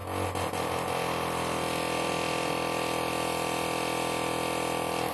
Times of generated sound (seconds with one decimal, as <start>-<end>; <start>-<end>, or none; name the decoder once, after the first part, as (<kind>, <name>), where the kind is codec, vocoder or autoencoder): none